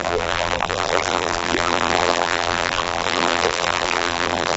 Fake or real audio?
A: fake